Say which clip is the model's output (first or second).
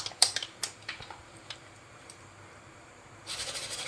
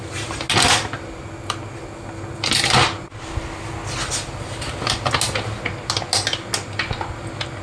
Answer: first